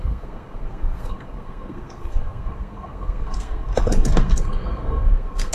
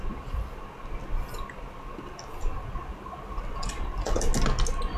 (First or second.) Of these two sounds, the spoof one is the first